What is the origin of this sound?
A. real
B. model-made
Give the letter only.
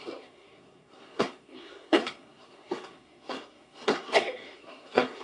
B